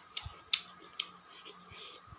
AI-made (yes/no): no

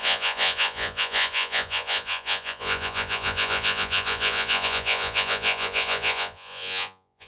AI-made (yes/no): yes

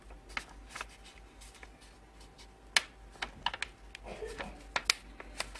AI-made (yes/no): no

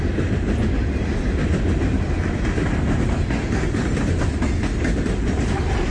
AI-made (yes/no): no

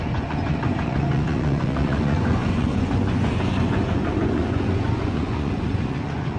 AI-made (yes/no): yes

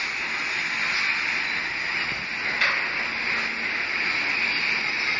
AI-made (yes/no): no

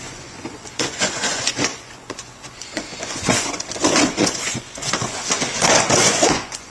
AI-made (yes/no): yes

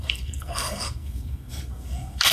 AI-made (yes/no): yes